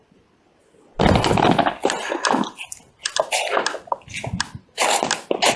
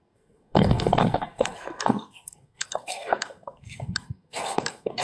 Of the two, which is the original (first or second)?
first